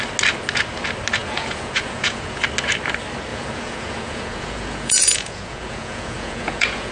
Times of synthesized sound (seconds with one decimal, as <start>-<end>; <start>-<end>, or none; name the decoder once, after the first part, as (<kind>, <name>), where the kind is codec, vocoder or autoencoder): 1.2-2.4 (vocoder, Vocos); 3.3-6.9